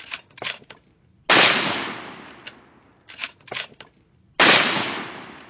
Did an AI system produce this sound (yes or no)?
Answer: no